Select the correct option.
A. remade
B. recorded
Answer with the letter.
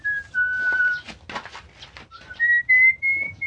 B